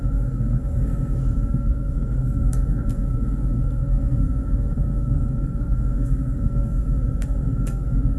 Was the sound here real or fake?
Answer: fake